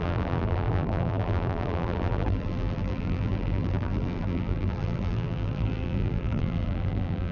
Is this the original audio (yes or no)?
no